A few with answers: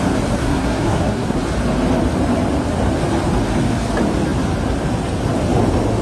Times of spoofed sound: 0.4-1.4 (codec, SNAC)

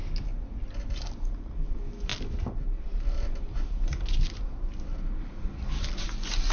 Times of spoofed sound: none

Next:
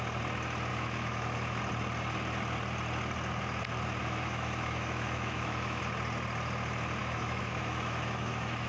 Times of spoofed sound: 0.7-1.6 (autoencoder, DAC-VAE); 4.0-5.8; 7.0-8.7